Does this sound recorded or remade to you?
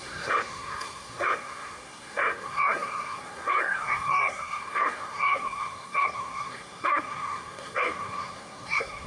remade